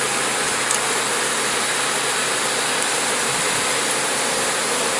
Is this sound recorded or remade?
recorded